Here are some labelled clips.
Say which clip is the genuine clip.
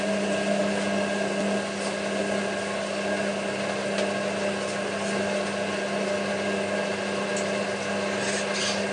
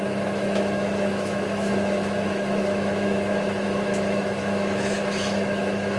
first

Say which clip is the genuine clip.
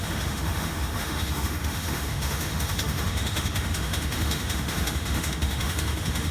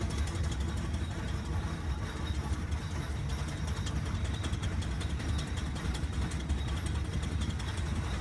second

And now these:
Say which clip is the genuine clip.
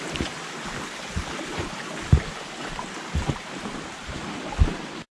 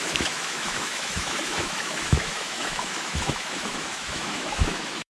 first